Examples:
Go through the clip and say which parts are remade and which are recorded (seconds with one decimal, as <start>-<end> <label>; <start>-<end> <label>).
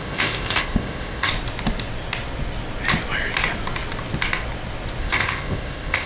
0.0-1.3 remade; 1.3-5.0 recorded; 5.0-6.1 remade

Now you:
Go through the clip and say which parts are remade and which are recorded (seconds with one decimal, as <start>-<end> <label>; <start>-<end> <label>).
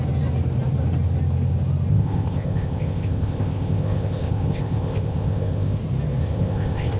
0.0-1.9 recorded; 1.9-5.8 remade; 5.8-6.2 recorded; 6.2-7.0 remade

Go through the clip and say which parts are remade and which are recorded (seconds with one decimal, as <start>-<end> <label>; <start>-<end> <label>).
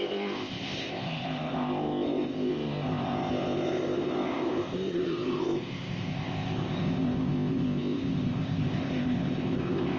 0.0-10.0 remade